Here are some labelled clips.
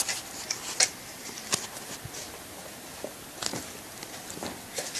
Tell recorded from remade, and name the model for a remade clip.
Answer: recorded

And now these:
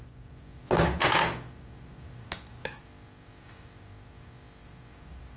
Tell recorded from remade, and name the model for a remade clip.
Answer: recorded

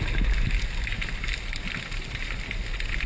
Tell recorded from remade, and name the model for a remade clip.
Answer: recorded